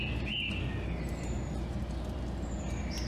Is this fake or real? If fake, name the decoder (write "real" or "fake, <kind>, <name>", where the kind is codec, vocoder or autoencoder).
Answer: real